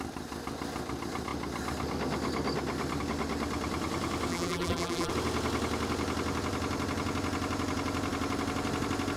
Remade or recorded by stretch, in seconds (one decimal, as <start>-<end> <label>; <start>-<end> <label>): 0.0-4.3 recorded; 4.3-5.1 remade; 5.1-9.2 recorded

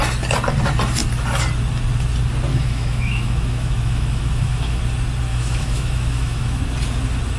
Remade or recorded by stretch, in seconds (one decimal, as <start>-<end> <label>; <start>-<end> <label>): 0.0-2.5 recorded; 2.5-4.8 remade; 4.8-5.3 recorded; 5.3-6.6 remade; 6.6-7.4 recorded

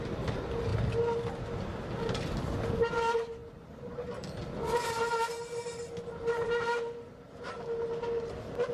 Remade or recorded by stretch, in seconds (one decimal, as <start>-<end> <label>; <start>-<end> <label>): 0.0-8.7 recorded